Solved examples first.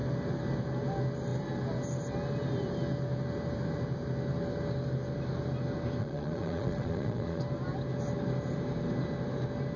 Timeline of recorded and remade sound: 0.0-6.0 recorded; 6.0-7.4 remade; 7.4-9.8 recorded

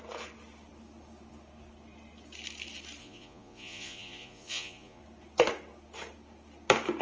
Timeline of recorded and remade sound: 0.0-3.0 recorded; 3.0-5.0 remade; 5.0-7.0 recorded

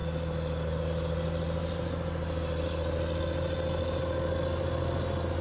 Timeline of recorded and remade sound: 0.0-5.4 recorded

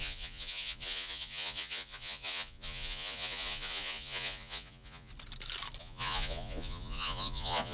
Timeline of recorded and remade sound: 0.0-5.1 remade; 5.1-5.8 recorded; 5.8-7.7 remade

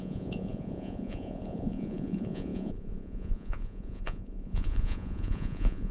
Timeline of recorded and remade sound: 0.0-5.9 remade